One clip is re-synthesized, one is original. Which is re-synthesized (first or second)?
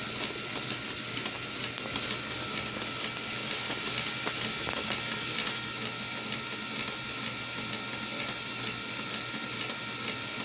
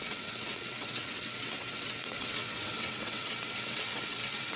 second